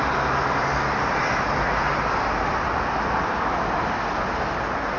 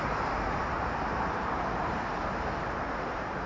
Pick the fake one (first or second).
second